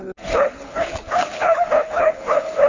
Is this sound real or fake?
fake